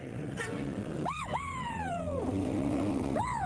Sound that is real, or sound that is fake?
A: fake